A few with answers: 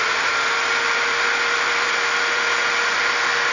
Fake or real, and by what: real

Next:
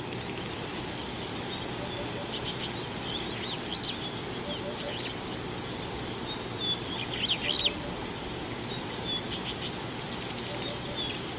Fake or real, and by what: real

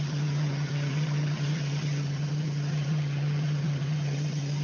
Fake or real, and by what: fake, vocoder, HiFi-GAN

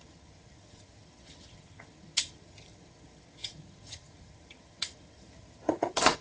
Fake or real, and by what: fake, vocoder, HiFi-GAN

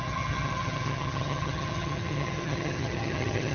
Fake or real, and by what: fake, vocoder, HiFi-GAN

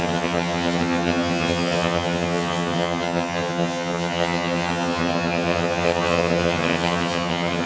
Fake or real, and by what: fake, vocoder, HiFi-GAN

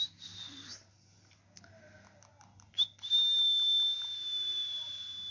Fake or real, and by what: real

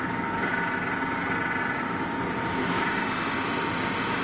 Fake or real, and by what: real